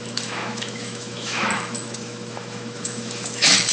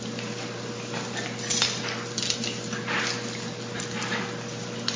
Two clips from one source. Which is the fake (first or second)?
first